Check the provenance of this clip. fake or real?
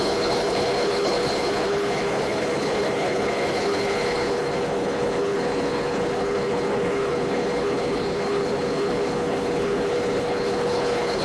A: fake